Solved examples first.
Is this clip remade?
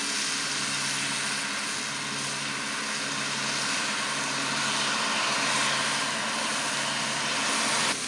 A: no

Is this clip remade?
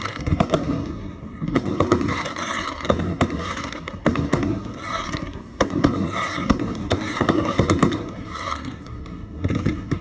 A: yes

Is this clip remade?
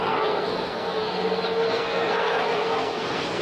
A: yes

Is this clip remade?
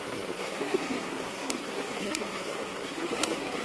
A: yes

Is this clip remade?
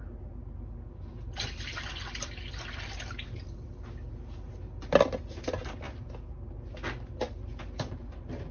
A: no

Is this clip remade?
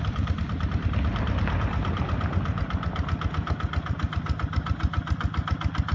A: no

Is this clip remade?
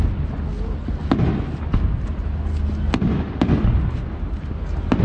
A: no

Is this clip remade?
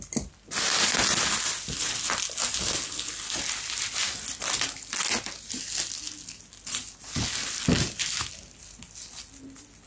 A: no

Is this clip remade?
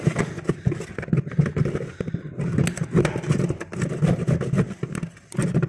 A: no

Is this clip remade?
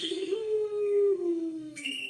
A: yes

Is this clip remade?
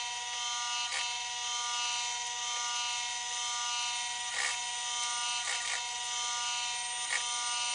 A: no